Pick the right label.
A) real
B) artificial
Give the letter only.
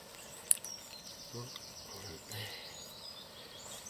B